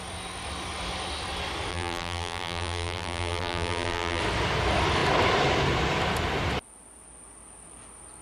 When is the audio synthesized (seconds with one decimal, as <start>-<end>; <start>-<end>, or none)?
1.7-4.2